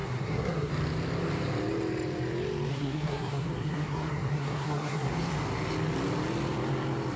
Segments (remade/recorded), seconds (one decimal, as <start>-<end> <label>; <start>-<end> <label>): 0.0-0.7 remade; 0.7-2.7 recorded; 2.7-5.1 remade; 5.1-7.2 recorded